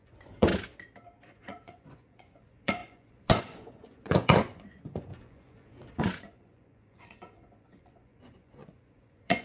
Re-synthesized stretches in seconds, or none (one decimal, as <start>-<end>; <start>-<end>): 0.0-0.5; 1.2-9.4